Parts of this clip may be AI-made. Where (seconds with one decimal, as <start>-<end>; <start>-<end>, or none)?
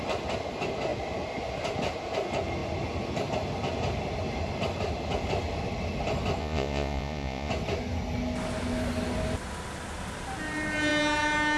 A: 6.4-7.5